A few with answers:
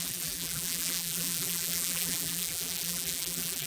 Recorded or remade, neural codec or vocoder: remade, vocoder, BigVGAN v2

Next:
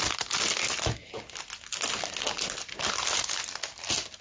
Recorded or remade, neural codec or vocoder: recorded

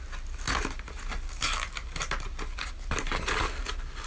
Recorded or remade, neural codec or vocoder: recorded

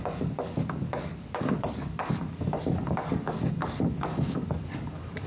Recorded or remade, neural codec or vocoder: remade, codec, DAC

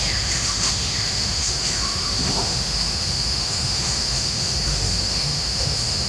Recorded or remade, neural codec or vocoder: remade, autoencoder, DAC-VAE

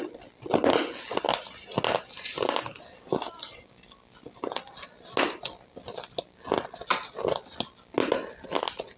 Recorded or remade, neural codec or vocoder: recorded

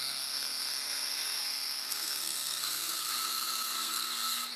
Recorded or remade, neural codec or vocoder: remade, codec, SNAC